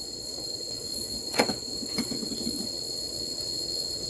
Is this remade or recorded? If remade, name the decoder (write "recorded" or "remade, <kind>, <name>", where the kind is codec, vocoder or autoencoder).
remade, vocoder, WaveNeXt